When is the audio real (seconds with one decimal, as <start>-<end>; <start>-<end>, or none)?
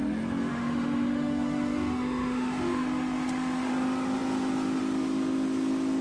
0.0-0.5; 3.7-6.0